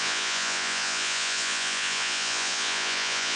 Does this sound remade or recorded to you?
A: remade